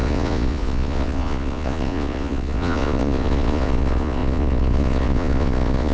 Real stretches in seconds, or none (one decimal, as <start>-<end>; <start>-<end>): none